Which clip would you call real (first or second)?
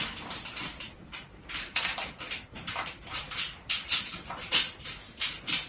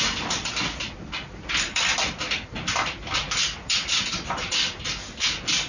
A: second